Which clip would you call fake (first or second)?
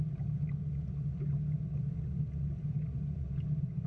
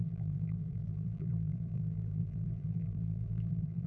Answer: second